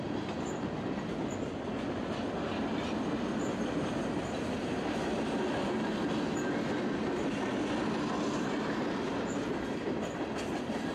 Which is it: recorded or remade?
recorded